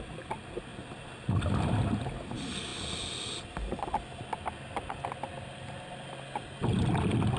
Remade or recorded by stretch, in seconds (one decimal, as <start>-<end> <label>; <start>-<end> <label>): 0.0-7.4 recorded